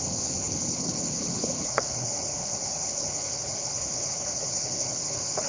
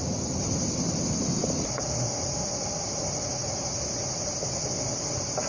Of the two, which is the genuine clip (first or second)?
second